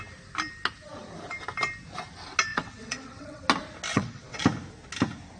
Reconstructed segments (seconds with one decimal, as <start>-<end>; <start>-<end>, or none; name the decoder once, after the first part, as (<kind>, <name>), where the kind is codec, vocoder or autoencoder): 2.5-3.4 (vocoder, WaveNeXt); 3.9-4.4